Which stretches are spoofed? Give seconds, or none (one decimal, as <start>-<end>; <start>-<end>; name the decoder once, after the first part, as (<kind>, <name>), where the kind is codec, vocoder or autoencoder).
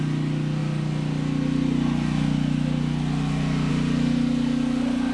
none